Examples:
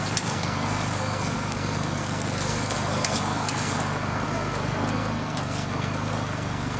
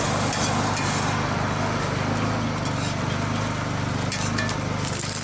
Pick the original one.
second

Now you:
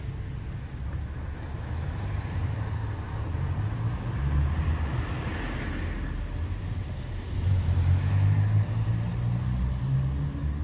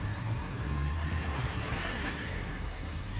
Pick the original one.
first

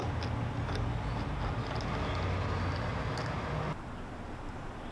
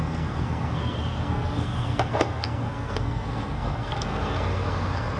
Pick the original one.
first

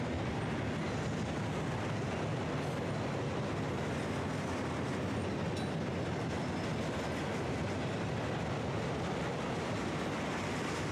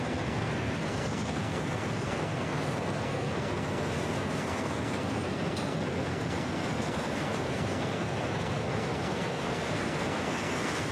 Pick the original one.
first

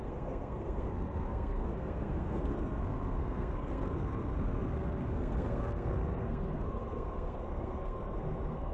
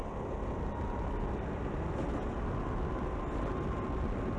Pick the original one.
second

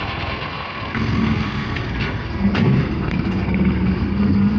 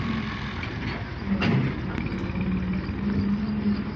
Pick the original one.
second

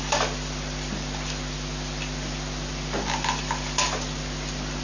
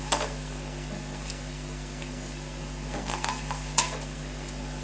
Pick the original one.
first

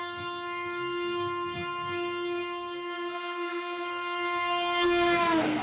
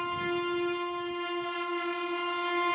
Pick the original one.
second